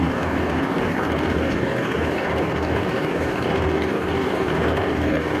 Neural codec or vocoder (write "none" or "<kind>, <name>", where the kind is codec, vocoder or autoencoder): codec, DAC